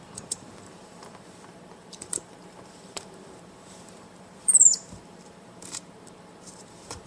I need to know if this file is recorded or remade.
remade